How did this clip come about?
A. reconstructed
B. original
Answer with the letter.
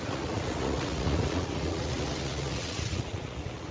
A